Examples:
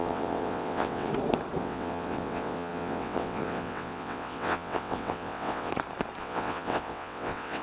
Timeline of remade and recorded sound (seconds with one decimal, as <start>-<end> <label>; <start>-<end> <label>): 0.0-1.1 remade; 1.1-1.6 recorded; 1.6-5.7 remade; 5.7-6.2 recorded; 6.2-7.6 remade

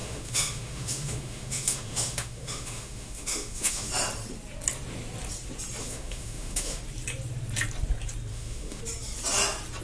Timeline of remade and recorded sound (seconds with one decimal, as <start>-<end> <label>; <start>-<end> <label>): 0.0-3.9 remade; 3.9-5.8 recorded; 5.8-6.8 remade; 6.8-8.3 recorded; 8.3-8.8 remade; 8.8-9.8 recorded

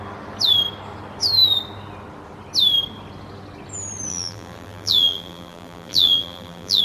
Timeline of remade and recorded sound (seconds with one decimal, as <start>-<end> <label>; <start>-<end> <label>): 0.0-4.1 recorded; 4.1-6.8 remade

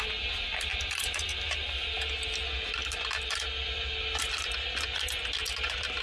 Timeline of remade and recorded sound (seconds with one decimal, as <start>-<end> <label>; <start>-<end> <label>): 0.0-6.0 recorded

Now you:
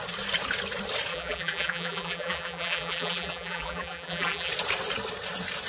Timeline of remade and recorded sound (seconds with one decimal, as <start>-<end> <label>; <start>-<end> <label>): 0.0-1.1 recorded; 1.1-4.5 remade; 4.5-5.7 recorded